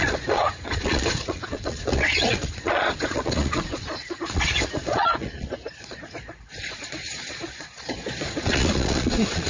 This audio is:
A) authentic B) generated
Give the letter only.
B